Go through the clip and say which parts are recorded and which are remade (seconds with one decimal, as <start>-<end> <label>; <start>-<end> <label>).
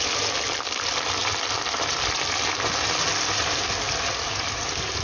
0.0-5.0 recorded